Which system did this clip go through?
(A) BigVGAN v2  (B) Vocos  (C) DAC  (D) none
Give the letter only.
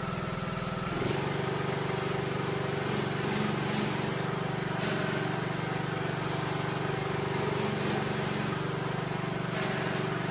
D